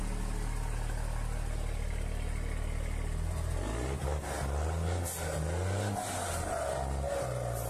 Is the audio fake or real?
real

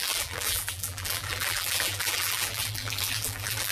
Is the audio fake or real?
fake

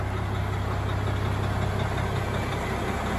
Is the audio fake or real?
real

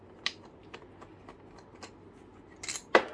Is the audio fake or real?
real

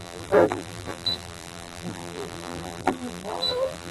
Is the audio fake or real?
fake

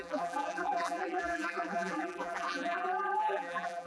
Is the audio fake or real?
fake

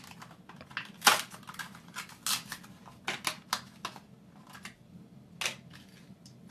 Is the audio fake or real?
real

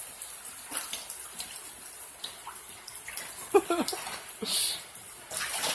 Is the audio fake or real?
real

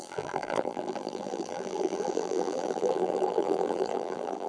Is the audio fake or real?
fake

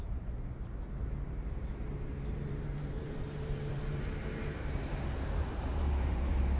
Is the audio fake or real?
fake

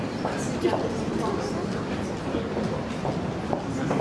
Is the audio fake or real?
real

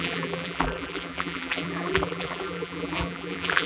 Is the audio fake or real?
fake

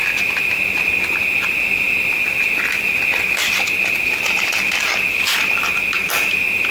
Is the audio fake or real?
fake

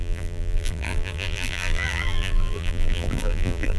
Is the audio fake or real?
fake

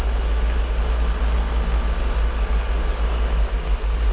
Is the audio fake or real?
real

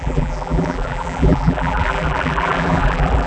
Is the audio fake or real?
fake